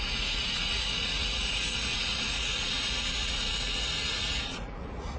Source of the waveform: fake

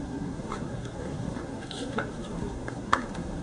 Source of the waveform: fake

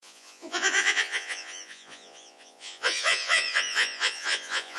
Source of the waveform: fake